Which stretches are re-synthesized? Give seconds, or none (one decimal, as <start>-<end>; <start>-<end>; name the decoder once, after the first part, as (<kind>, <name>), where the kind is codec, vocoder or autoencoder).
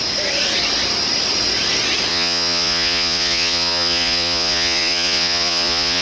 2.1-6.0 (vocoder, Vocos)